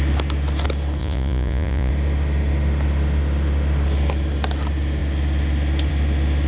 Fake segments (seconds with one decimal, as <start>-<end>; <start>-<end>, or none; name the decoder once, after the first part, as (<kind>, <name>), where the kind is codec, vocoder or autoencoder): 1.0-1.9 (vocoder, Vocos)